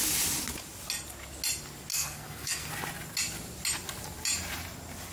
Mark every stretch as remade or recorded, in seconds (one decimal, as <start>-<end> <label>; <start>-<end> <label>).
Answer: 0.0-1.9 recorded; 1.9-2.7 remade; 2.7-5.1 recorded